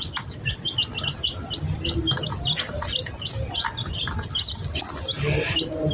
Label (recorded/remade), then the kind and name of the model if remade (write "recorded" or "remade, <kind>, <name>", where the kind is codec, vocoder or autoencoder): recorded